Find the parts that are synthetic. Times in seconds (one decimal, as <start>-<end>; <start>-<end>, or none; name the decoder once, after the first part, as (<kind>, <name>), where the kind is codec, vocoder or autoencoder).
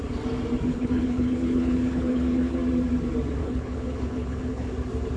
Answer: 0.7-2.6 (codec, HILCodec); 3.4-4.7